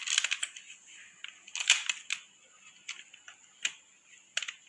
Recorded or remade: recorded